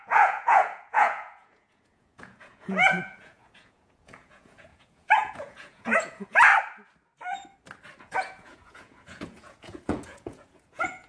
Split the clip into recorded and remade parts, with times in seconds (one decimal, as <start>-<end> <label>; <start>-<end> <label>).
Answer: 0.0-6.5 remade; 6.5-8.0 recorded; 8.0-11.1 remade